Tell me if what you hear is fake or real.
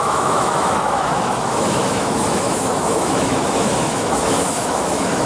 fake